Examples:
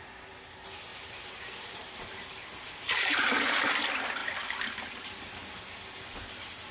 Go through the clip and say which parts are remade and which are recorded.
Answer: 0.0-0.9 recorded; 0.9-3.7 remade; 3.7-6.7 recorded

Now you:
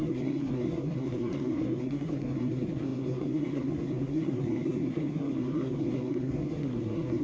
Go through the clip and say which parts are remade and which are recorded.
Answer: 0.0-7.2 remade